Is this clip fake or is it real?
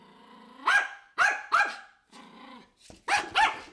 real